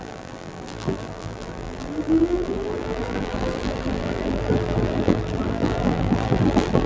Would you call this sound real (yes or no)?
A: no